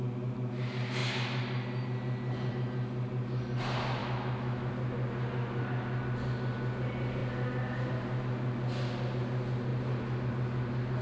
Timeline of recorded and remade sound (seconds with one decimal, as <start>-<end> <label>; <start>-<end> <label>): 0.0-4.0 recorded; 4.0-4.7 remade; 4.7-11.0 recorded